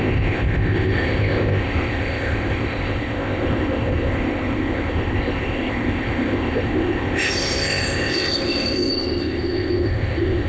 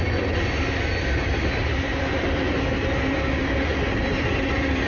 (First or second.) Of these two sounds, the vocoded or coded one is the first